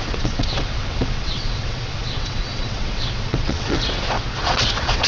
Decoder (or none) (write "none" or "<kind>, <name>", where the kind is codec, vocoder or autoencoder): vocoder, WaveNeXt